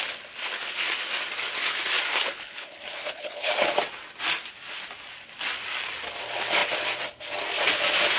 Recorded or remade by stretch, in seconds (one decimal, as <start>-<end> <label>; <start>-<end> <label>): 0.0-2.1 recorded; 2.1-3.5 remade; 3.5-8.2 recorded